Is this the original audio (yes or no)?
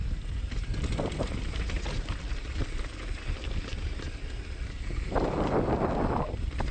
yes